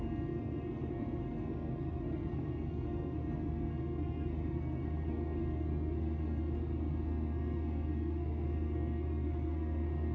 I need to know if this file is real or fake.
fake